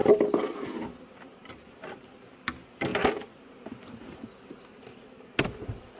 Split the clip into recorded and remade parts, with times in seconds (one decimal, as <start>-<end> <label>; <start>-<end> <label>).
0.0-2.3 remade; 2.3-2.9 recorded; 2.9-4.2 remade; 4.2-6.0 recorded